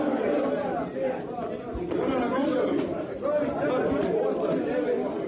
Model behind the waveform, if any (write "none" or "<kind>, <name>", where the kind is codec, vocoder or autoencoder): none